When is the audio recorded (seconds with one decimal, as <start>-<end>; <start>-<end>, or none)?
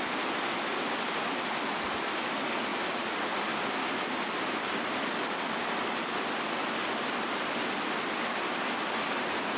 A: 0.0-9.6